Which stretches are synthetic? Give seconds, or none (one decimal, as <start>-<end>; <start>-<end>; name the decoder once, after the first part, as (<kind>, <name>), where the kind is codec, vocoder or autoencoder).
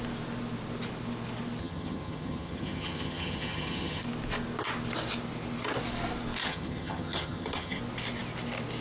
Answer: 1.6-4.0 (vocoder, HiFi-GAN); 6.4-7.8